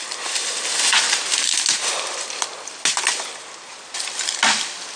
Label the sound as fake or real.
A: real